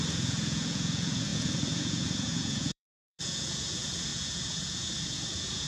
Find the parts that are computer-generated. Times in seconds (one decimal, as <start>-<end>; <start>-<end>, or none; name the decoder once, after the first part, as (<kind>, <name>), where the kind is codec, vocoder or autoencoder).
0.0-5.7 (vocoder, Vocos)